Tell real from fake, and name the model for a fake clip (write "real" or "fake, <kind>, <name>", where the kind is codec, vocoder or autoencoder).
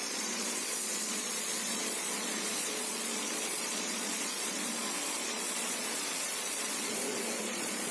fake, vocoder, Vocos